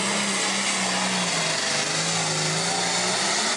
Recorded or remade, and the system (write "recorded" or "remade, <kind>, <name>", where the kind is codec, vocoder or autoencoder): recorded